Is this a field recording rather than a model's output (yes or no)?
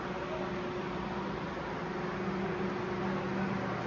yes